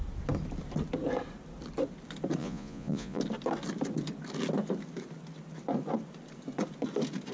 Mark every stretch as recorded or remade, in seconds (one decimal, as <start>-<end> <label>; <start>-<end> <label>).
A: 0.0-2.4 recorded; 2.4-3.2 remade; 3.2-7.3 recorded